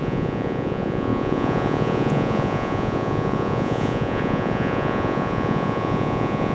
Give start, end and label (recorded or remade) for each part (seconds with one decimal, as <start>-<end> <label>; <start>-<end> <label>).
0.0-6.5 remade